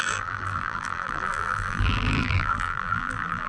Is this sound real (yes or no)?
no